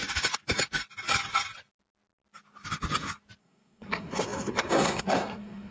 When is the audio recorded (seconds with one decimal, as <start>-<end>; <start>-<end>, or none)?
0.0-3.4